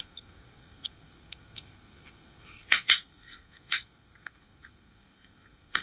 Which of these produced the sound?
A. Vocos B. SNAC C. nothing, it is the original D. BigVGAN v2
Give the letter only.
B